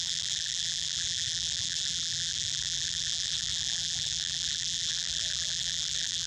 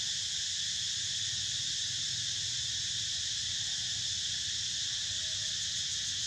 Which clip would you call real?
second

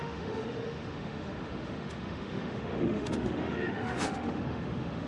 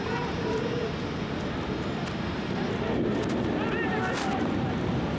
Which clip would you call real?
second